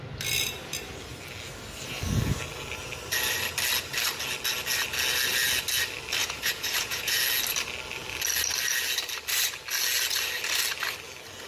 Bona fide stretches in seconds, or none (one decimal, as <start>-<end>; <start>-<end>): 0.0-6.2; 7.2-11.5